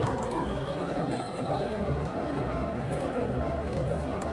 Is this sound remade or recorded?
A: remade